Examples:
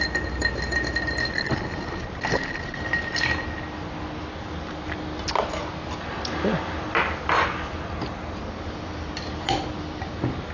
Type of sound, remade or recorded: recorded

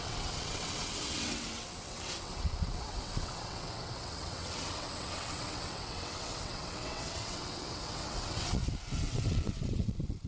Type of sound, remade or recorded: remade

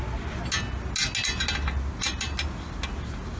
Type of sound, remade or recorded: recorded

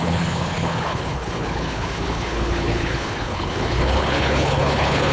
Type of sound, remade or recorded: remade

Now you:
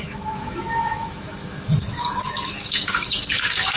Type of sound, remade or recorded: remade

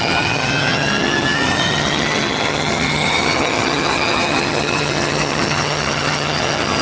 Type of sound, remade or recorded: remade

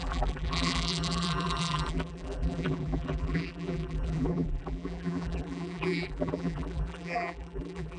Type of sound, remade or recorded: remade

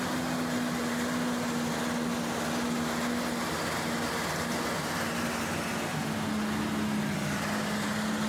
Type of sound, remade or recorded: recorded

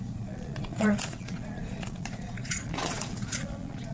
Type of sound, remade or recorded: remade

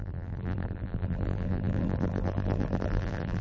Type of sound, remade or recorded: remade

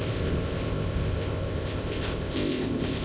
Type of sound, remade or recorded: remade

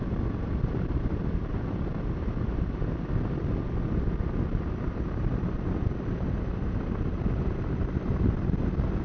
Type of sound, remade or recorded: recorded